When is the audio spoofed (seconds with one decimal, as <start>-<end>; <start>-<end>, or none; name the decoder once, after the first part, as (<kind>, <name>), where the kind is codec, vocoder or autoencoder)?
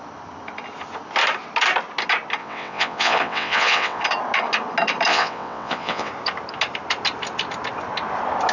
2.4-4.0 (vocoder, WaveNeXt); 5.1-6.1